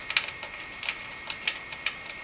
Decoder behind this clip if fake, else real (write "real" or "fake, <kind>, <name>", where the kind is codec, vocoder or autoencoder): real